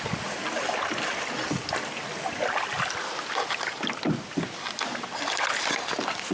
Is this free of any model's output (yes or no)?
yes